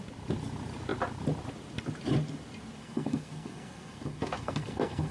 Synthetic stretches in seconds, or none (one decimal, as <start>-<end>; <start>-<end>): 2.8-5.1